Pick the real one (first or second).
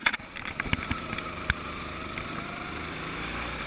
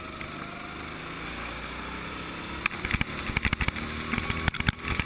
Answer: second